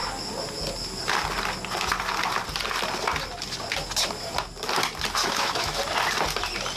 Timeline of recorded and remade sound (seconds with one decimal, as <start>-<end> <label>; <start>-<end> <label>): 0.0-5.2 recorded; 5.2-5.8 remade; 5.8-6.8 recorded

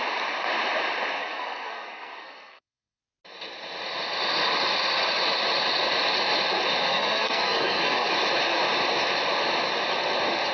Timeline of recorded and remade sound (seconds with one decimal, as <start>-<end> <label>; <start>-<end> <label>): 0.0-1.2 recorded; 1.2-3.0 remade; 3.0-6.8 recorded; 6.8-8.1 remade; 8.1-10.5 recorded

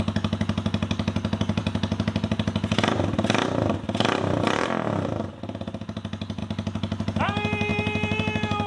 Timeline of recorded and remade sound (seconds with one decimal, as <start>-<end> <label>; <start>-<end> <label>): 0.0-8.7 recorded